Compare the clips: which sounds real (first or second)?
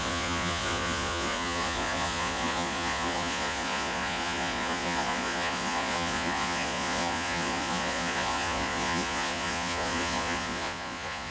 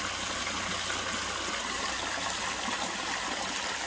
second